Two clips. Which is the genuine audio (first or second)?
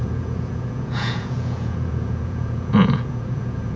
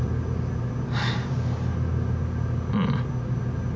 second